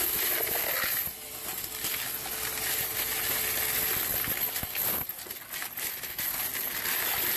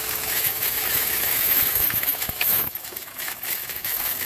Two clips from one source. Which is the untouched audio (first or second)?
first